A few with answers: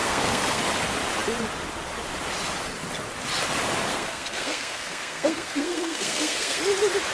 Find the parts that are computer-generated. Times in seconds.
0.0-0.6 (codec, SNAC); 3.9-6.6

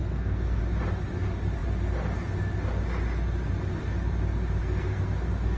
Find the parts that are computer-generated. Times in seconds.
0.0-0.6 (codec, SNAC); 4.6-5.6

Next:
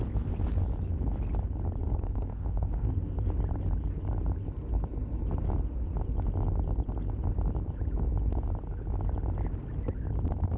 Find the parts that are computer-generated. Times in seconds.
1.8-2.9 (codec, SNAC)

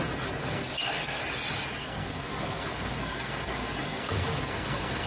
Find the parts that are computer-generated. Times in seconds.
0.4-1.2 (codec, SNAC); 1.8-5.1